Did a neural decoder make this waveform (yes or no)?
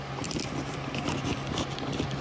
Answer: no